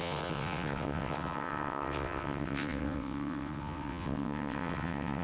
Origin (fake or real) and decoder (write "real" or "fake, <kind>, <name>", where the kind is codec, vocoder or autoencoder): fake, vocoder, WaveNeXt